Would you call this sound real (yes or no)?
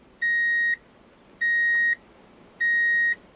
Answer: yes